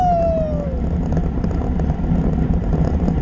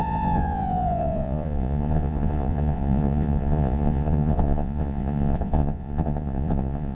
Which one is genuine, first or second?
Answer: first